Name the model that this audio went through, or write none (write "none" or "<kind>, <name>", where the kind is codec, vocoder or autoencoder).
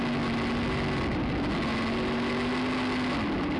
none